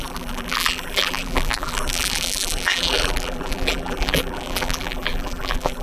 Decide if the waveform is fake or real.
fake